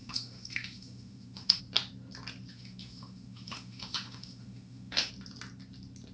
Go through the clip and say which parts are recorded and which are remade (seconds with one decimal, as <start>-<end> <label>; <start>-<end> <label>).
0.0-1.6 remade; 1.6-2.5 recorded; 2.5-5.1 remade; 5.1-6.1 recorded